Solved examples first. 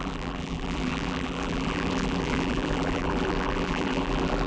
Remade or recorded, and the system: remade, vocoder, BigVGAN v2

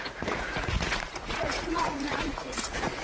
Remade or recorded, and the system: remade, vocoder, Vocos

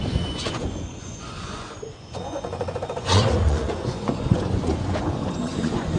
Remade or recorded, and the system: remade, vocoder, Vocos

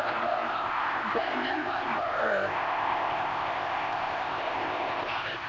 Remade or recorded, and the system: remade, codec, ZipCodec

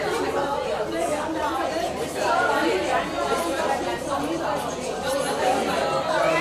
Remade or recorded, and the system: recorded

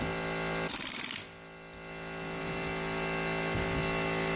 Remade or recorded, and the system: recorded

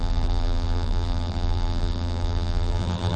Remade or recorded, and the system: remade, vocoder, BigVGAN v2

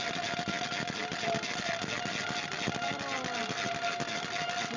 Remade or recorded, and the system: recorded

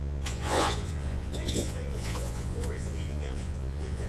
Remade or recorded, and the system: remade, vocoder, Vocos